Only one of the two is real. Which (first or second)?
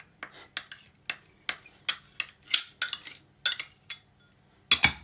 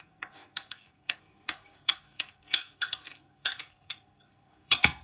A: first